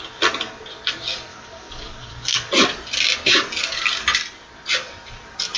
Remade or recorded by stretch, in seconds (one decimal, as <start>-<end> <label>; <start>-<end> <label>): 0.0-1.3 recorded; 1.3-2.5 remade; 2.5-5.6 recorded